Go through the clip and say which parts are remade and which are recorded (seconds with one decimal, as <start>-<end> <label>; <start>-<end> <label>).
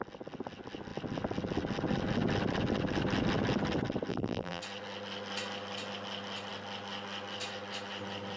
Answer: 0.0-4.1 recorded; 4.1-4.6 remade; 4.6-8.4 recorded